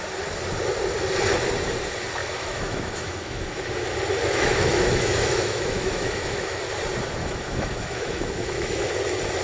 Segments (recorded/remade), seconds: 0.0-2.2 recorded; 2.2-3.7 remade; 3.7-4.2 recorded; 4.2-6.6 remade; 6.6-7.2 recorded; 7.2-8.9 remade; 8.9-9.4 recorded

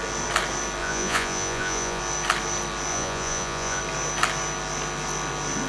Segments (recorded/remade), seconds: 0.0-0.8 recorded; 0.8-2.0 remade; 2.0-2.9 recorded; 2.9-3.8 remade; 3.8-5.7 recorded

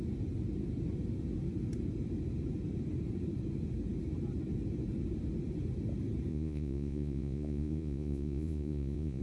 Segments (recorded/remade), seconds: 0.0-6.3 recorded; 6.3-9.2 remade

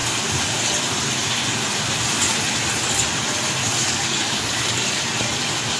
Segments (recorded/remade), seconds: 0.0-0.7 remade; 0.7-3.6 recorded; 3.6-5.0 remade; 5.0-5.8 recorded

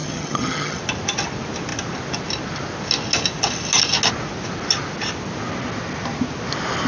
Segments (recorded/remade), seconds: 0.0-0.8 remade; 0.8-6.9 recorded